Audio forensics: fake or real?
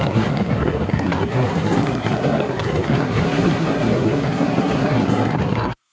fake